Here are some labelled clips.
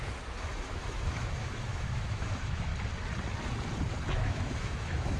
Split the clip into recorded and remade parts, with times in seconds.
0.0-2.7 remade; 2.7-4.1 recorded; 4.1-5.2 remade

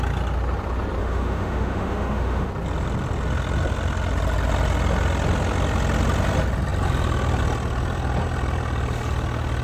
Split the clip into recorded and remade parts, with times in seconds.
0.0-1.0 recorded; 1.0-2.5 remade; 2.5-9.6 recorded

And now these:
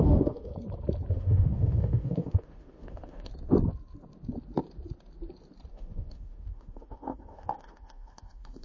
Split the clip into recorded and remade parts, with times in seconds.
0.0-0.5 remade; 0.5-1.1 recorded; 1.1-3.3 remade; 3.3-5.7 recorded; 5.7-8.6 remade

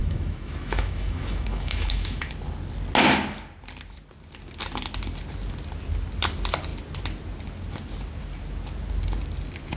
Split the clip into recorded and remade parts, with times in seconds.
0.0-2.3 remade; 2.3-9.8 recorded